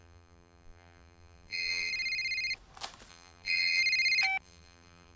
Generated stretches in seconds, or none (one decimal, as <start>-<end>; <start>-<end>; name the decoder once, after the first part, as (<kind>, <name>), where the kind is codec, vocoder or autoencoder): 0.0-1.9 (vocoder, BigVGAN v2); 3.1-3.8; 4.4-5.2